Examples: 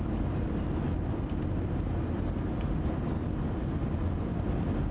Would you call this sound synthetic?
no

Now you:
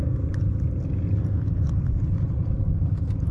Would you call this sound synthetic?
no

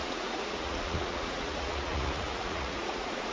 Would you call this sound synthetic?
yes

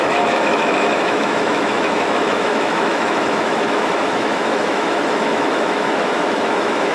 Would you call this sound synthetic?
yes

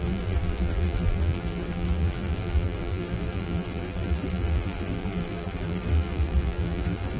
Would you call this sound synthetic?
yes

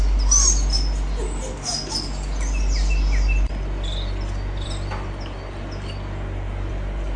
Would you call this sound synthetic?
no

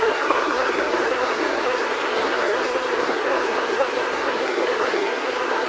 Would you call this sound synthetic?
yes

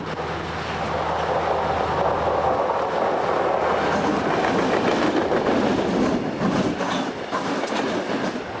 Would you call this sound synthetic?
no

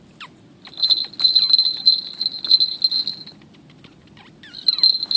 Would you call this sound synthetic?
no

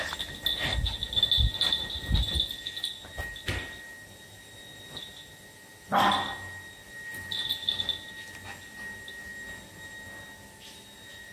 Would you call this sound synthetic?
no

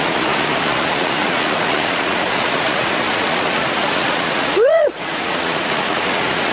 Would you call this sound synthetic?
yes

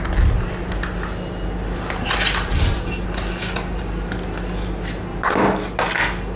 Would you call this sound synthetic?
no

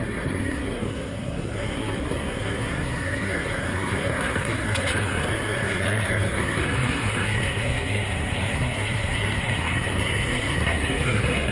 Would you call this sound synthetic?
yes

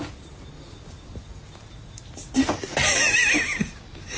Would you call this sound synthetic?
no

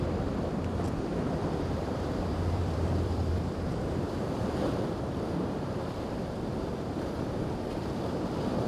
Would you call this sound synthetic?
yes